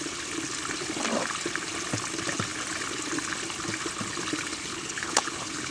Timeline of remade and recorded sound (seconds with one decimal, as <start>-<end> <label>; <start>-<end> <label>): 0.0-4.7 recorded; 4.7-5.7 remade